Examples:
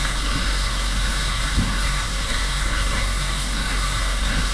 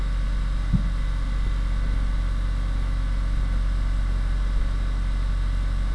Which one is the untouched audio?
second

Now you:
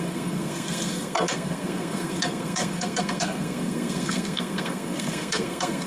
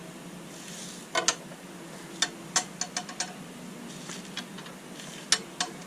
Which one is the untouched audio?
second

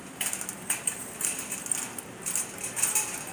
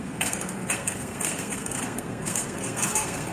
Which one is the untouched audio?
first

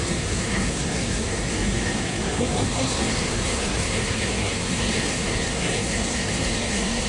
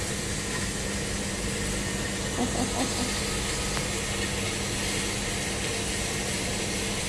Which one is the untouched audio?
second